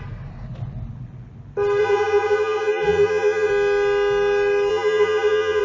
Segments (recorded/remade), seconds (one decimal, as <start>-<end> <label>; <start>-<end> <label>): 0.0-1.8 recorded; 1.8-3.5 remade; 3.5-4.7 recorded; 4.7-5.6 remade